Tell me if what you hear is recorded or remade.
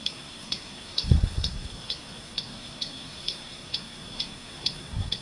remade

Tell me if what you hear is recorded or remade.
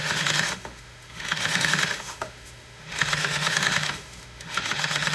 remade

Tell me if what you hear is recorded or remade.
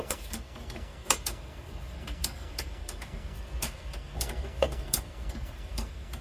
remade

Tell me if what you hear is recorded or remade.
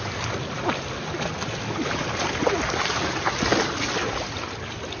recorded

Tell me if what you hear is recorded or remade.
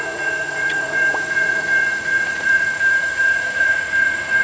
remade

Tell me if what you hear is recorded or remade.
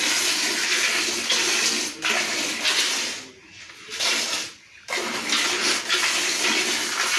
recorded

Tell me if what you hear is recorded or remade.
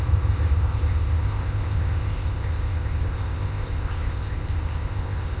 remade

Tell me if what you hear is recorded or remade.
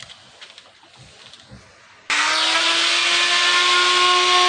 recorded